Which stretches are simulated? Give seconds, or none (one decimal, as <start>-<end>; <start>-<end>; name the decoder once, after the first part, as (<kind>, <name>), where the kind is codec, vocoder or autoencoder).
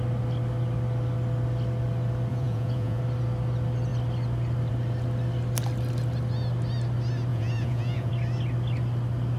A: 2.3-3.0 (vocoder, Vocos); 7.3-8.1